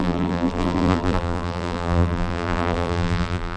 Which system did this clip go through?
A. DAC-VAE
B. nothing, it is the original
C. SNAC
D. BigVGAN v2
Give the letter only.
D